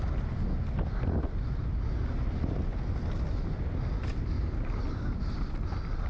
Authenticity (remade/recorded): recorded